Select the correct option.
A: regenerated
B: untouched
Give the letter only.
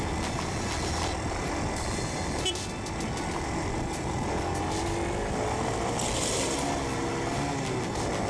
B